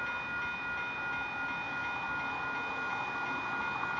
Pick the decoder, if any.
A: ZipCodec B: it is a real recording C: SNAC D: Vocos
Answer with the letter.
B